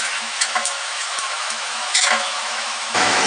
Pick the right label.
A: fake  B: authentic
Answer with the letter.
A